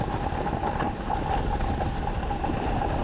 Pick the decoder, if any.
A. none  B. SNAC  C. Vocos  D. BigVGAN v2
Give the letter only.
A